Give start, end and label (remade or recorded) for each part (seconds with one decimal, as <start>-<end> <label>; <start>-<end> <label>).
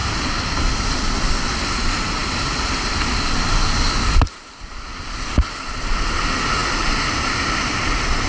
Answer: 0.0-1.3 remade; 1.3-2.2 recorded; 2.2-5.9 remade; 5.9-8.3 recorded